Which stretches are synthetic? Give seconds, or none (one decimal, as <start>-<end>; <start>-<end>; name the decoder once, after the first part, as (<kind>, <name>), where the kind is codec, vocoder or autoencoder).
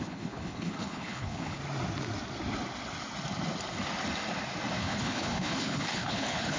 0.0-1.6 (codec, HILCodec); 4.8-6.6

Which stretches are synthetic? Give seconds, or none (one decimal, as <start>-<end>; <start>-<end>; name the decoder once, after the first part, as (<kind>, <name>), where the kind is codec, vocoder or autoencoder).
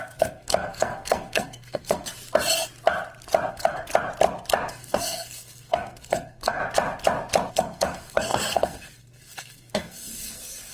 0.0-2.1 (codec, SNAC); 3.5-3.9; 4.7-6.6; 7.5-10.7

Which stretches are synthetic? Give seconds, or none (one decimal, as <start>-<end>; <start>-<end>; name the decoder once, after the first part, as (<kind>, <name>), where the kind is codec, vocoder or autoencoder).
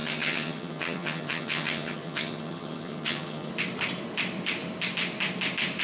0.0-3.5 (vocoder, HiFi-GAN)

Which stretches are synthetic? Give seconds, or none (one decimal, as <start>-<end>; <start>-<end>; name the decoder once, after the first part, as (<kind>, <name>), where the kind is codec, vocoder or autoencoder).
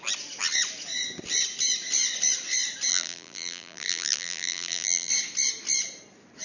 2.9-5.1 (vocoder, BigVGAN v2)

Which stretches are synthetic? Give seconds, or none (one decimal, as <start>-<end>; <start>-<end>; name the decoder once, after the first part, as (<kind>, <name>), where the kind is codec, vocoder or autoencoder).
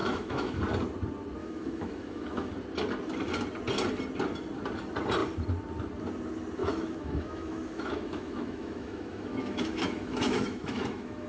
0.0-0.6 (autoencoder, DAC-VAE); 1.4-2.5; 6.6-11.3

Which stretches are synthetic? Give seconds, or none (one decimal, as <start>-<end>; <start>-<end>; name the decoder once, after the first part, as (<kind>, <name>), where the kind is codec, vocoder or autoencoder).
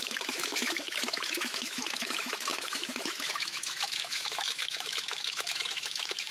0.0-6.3 (autoencoder, DAC-VAE)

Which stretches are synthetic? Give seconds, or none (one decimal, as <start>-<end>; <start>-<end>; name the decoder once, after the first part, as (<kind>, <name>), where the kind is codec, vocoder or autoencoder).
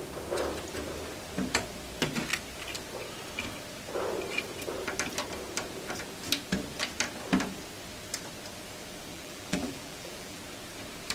9.1-10.4 (vocoder, BigVGAN v2)